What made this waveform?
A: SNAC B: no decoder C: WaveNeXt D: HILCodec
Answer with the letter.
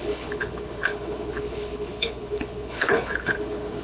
D